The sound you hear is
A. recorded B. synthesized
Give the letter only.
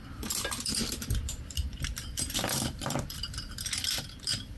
B